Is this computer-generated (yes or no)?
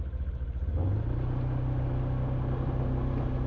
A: no